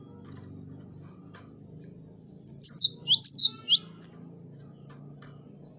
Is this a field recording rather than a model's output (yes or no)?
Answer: yes